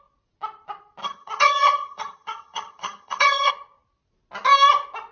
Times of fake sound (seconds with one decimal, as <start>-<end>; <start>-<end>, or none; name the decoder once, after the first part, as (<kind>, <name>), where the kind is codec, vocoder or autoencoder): 1.0-3.5 (vocoder, HiFi-GAN)